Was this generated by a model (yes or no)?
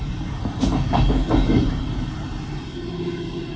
no